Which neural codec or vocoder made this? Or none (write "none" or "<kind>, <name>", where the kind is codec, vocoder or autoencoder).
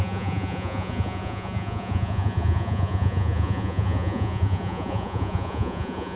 vocoder, Vocos